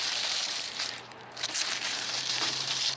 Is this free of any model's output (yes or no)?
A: no